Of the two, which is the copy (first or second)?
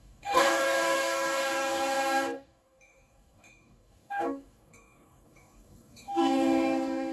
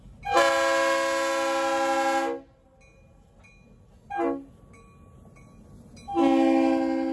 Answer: first